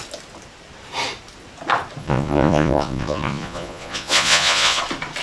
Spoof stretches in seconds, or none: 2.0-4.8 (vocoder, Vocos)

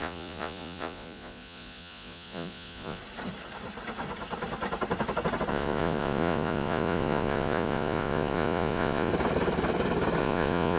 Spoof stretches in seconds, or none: 0.0-3.0 (vocoder, Vocos); 5.5-9.1; 10.2-10.8

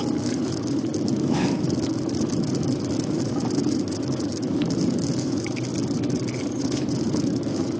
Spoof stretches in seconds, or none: 0.0-5.7 (autoencoder, DAC-VAE); 6.5-7.8